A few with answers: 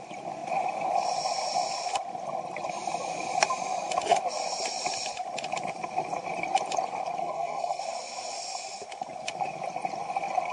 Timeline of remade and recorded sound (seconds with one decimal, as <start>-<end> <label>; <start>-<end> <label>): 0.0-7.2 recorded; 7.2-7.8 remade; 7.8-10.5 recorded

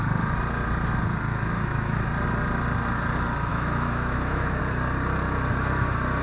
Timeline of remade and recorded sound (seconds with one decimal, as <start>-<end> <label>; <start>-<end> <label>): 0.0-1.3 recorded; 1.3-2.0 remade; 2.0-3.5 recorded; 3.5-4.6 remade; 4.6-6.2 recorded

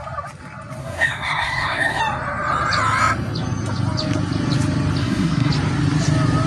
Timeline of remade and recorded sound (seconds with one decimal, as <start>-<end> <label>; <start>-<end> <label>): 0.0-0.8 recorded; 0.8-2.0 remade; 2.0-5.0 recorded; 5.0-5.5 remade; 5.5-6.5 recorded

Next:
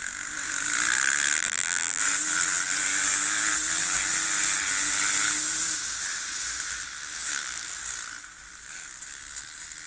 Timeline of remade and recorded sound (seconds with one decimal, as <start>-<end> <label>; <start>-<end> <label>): 0.0-1.4 recorded; 1.4-2.0 remade; 2.0-9.9 recorded